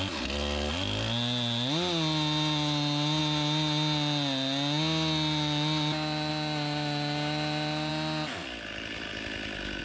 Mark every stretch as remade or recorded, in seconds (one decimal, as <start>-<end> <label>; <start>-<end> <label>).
0.0-9.8 recorded